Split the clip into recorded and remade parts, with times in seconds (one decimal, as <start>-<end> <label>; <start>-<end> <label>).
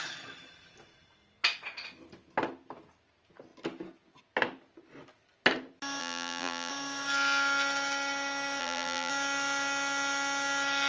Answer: 0.0-6.0 recorded; 6.0-6.7 remade; 6.7-8.6 recorded; 8.6-9.1 remade; 9.1-10.9 recorded